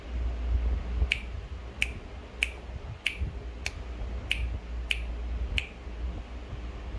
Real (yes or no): yes